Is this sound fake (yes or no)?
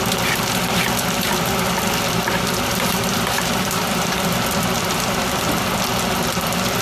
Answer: yes